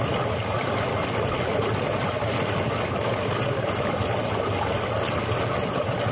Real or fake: real